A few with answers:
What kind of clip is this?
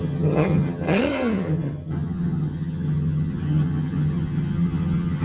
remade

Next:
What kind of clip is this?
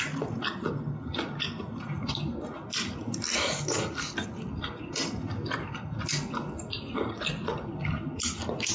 recorded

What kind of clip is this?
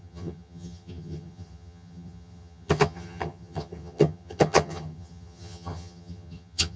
remade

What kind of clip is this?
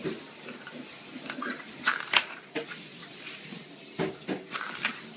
recorded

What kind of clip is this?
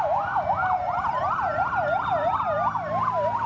recorded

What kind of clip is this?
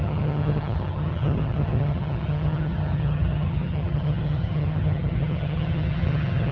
remade